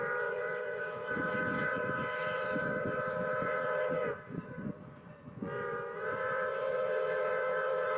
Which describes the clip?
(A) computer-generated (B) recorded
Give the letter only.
A